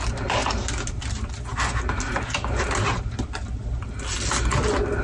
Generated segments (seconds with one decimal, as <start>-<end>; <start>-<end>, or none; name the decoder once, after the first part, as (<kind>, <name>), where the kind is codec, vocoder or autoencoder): none